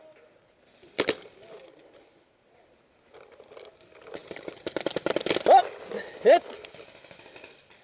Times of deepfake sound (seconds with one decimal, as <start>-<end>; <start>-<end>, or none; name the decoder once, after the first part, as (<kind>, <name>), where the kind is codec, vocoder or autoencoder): none